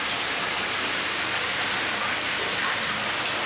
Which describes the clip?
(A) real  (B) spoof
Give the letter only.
A